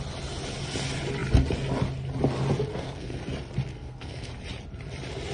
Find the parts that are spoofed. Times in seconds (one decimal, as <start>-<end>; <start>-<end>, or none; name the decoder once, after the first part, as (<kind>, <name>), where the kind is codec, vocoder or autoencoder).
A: 2.7-3.2 (codec, SNAC); 3.7-4.3